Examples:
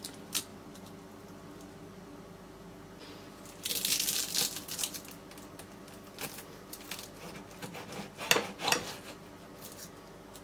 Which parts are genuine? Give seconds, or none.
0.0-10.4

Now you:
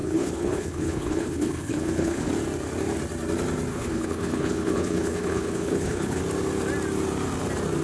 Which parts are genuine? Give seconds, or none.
2.3-3.7; 6.2-7.8

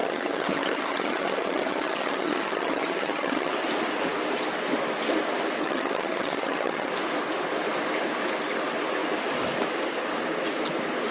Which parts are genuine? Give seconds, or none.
3.5-5.6; 6.9-11.1

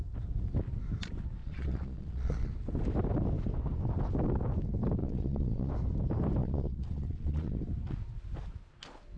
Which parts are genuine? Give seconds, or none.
0.0-1.4; 2.5-5.0; 5.7-6.4; 7.6-9.2

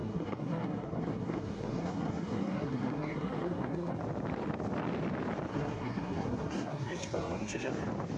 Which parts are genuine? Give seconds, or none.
4.0-5.5; 7.7-8.2